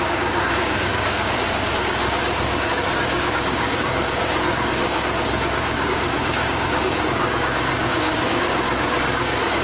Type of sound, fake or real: fake